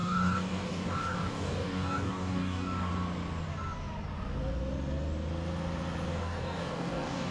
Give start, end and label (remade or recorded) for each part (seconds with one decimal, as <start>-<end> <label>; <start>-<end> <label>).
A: 0.0-2.9 remade; 2.9-6.1 recorded; 6.1-7.3 remade